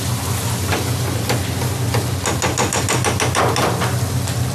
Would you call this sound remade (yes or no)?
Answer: no